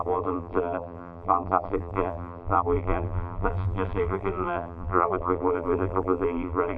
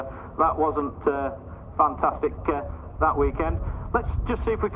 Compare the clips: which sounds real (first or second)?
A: second